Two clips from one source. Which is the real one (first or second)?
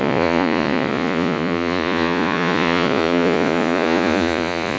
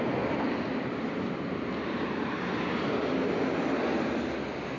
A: second